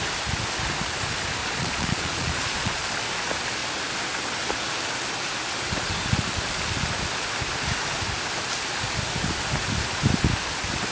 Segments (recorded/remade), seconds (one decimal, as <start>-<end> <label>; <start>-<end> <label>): 0.0-1.4 recorded; 1.4-2.9 remade; 2.9-10.9 recorded

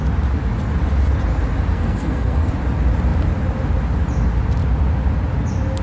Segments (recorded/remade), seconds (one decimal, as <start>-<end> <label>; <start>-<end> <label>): 0.0-1.7 recorded; 1.7-2.5 remade; 2.5-5.8 recorded

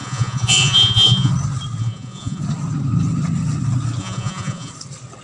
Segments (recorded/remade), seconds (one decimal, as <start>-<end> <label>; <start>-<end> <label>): 0.0-1.3 remade; 1.3-1.8 recorded; 1.8-2.4 remade; 2.4-4.0 recorded; 4.0-4.7 remade; 4.7-5.2 recorded

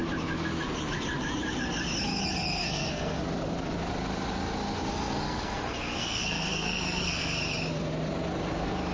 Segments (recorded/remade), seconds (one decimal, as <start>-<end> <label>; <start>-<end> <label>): 0.0-2.6 recorded; 2.6-3.2 remade; 3.2-4.9 recorded; 4.9-7.4 remade; 7.4-8.9 recorded

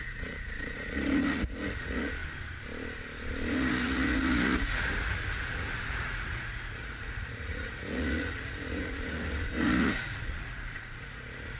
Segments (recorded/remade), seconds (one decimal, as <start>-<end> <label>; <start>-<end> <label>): 0.0-2.2 remade; 2.2-3.5 recorded; 3.5-11.6 remade

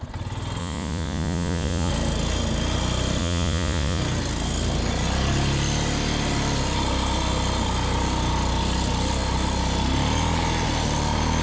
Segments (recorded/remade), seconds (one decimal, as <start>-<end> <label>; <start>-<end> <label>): 0.0-0.6 recorded; 0.6-1.9 remade; 1.9-3.2 recorded; 3.2-4.0 remade; 4.0-11.4 recorded

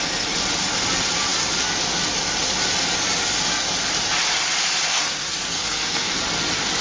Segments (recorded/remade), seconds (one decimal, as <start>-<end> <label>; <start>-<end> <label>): 0.0-4.9 recorded; 4.9-6.2 remade; 6.2-6.8 recorded